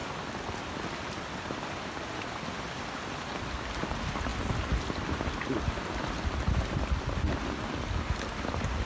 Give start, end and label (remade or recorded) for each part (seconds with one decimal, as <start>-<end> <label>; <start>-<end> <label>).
0.0-8.9 recorded

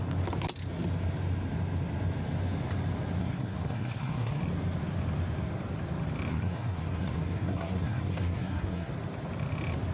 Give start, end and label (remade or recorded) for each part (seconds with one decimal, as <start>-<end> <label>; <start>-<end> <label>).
0.0-3.2 recorded; 3.2-4.4 remade; 4.4-6.3 recorded; 6.3-8.9 remade; 8.9-9.9 recorded

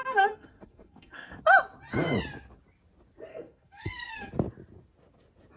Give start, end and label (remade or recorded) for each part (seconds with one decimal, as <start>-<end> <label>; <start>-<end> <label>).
0.0-1.4 remade; 1.4-3.3 recorded; 3.3-4.3 remade; 4.3-5.6 recorded

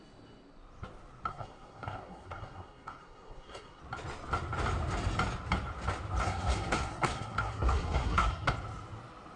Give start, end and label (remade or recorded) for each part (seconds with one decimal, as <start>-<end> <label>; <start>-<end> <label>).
0.0-1.3 recorded; 1.3-3.8 remade; 3.8-6.2 recorded; 6.2-8.5 remade; 8.5-9.4 recorded

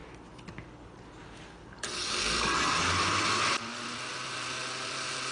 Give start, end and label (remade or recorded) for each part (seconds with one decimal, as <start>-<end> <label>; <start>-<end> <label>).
0.0-5.3 recorded

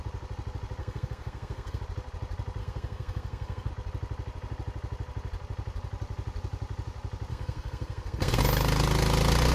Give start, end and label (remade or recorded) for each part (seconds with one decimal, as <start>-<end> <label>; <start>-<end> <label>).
0.0-0.8 recorded; 0.8-1.8 remade; 1.8-2.6 recorded; 2.6-3.7 remade; 3.7-7.3 recorded; 7.3-8.4 remade; 8.4-9.5 recorded

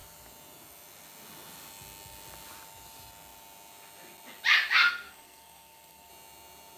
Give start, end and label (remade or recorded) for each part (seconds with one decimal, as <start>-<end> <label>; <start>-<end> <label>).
0.0-4.9 recorded; 4.9-6.1 remade; 6.1-6.8 recorded

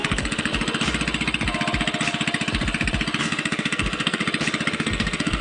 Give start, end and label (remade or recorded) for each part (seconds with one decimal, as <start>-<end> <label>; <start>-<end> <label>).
0.0-0.5 remade; 0.5-3.2 recorded; 3.2-4.2 remade; 4.2-4.7 recorded; 4.7-5.4 remade